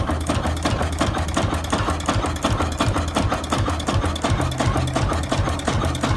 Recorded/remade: recorded